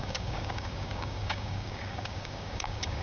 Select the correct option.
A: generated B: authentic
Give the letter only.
A